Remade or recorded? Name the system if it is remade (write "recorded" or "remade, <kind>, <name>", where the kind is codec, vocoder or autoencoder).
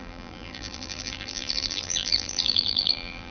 remade, vocoder, BigVGAN v2